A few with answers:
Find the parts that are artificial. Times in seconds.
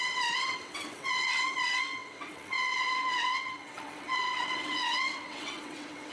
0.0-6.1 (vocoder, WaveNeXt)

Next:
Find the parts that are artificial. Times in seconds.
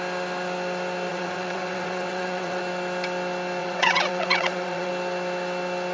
1.1-2.6 (vocoder, WaveNeXt); 3.6-4.9